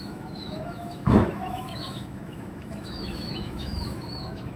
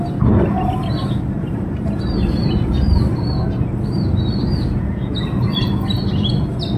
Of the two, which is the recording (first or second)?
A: second